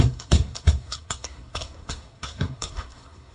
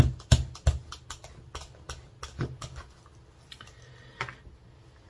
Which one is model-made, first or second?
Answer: first